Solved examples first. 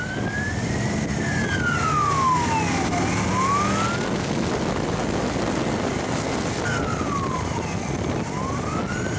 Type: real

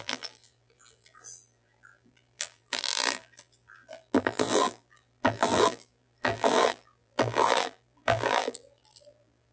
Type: fake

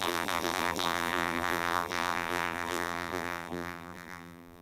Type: fake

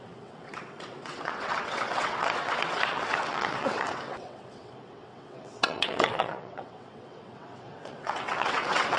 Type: fake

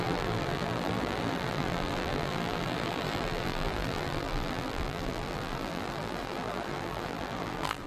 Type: fake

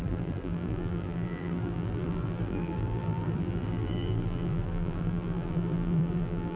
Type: fake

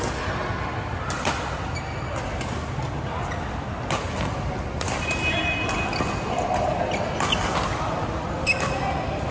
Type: real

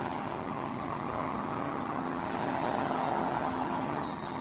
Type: fake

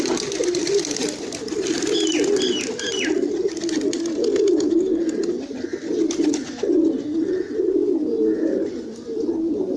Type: real